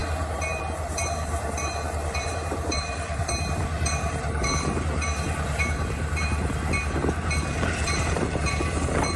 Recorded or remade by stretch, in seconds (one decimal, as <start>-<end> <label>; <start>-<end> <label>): 0.0-9.2 remade